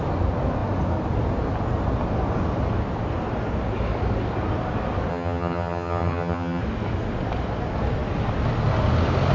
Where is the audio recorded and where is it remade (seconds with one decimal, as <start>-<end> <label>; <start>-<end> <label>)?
0.0-5.1 recorded; 5.1-6.6 remade; 6.6-9.3 recorded